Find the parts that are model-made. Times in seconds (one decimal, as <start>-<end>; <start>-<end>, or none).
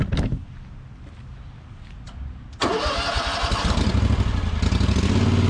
none